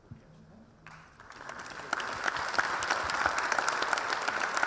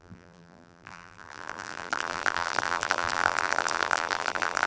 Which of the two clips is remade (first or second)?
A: second